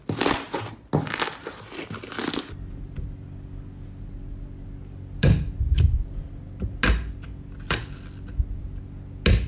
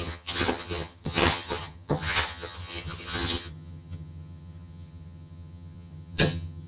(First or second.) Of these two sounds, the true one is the first